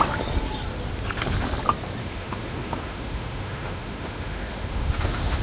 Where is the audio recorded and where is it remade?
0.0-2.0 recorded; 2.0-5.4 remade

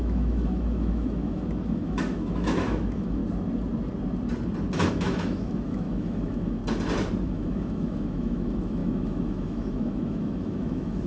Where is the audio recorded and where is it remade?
0.0-3.2 remade; 3.2-4.9 recorded; 4.9-6.6 remade; 6.6-7.2 recorded; 7.2-11.1 remade

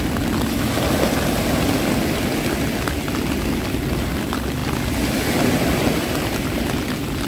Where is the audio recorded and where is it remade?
0.0-7.3 recorded

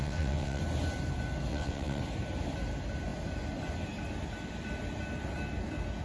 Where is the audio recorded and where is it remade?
0.0-0.6 remade; 0.6-1.5 recorded; 1.5-2.0 remade; 2.0-6.0 recorded

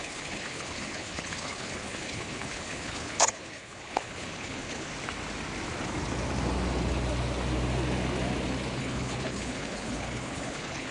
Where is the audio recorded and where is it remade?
0.0-4.9 remade; 4.9-8.8 recorded; 8.8-10.9 remade

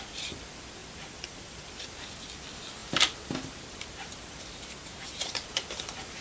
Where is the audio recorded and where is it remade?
0.0-0.8 recorded; 0.8-2.1 remade; 2.1-2.8 recorded; 2.8-5.8 remade; 5.8-6.2 recorded